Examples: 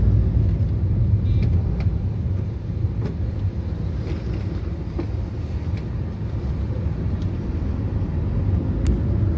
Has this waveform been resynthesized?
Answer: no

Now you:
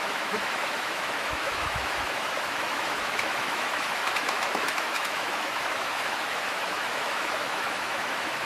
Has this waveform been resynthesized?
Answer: yes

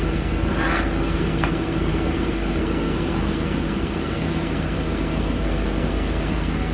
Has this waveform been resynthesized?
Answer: yes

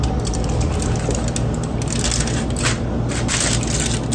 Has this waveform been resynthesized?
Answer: no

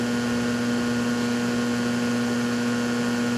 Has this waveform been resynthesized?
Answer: no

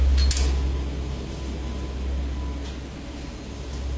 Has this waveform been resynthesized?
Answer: no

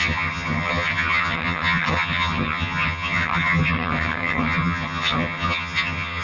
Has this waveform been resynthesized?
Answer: yes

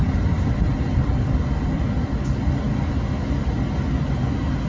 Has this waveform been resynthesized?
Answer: no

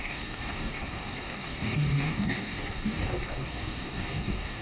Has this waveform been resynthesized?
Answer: yes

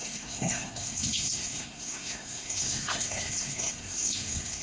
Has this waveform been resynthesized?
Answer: yes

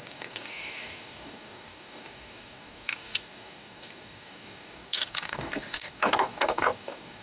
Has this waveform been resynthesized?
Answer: yes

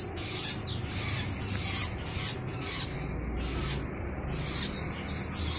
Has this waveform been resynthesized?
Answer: no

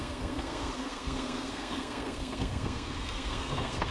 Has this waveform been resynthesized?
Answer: yes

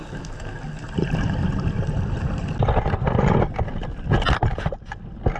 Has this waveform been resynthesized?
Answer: no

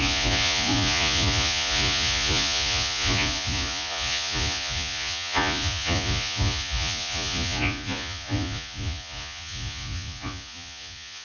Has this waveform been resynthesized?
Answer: yes